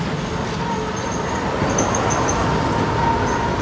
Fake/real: real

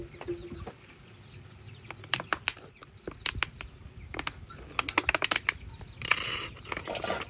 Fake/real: real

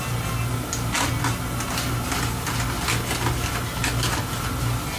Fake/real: real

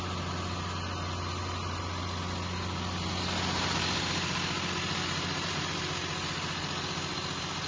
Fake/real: real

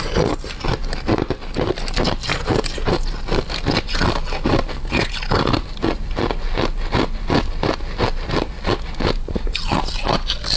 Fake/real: real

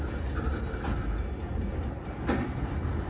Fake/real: real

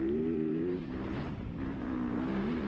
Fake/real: fake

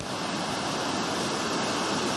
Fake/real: real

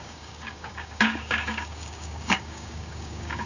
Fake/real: fake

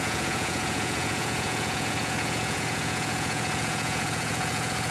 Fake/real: fake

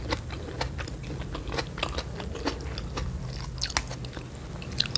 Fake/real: real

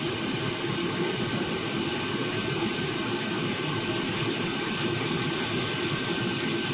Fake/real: real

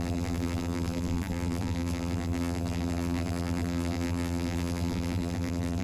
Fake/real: fake